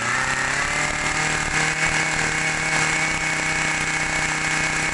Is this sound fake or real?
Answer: real